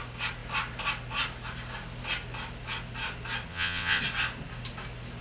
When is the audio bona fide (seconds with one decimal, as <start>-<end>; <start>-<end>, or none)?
0.0-3.5; 4.0-5.2